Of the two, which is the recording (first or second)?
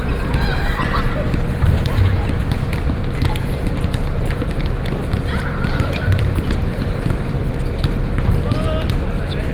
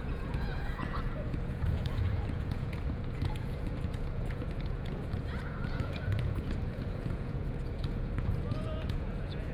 first